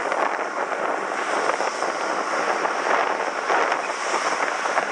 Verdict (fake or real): real